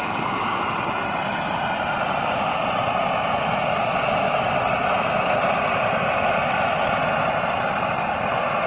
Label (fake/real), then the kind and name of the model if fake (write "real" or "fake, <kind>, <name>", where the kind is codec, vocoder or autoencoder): real